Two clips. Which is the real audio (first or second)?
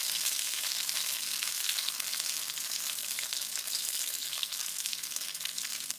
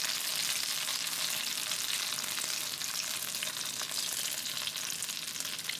second